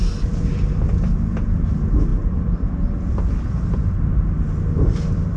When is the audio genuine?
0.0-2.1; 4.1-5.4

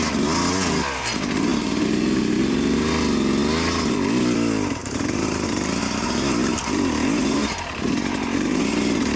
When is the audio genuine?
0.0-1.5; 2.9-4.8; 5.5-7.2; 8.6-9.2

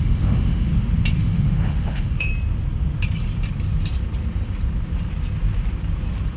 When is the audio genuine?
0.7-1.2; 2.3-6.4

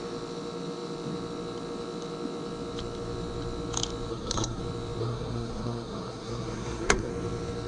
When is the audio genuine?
0.0-4.1; 4.6-5.0; 7.1-7.7

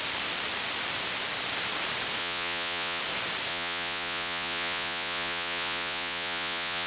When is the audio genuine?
0.0-2.2; 3.0-3.5

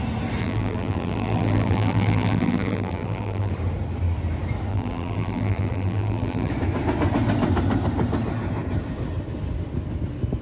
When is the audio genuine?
0.0-0.4; 3.5-4.7; 6.5-10.4

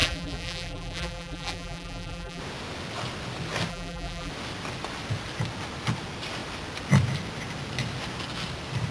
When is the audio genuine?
2.4-3.7; 4.3-8.9